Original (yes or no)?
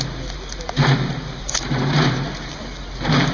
yes